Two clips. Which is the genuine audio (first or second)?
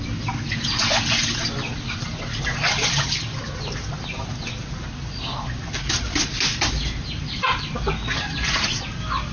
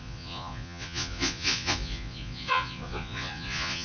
first